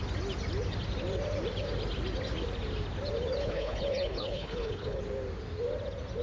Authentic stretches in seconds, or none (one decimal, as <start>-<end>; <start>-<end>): 0.0-3.4; 5.0-6.2